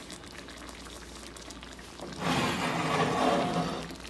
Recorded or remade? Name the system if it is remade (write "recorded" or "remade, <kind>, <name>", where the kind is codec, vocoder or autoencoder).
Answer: recorded